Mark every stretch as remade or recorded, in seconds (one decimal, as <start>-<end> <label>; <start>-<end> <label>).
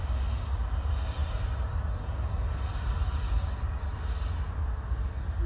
0.0-5.5 recorded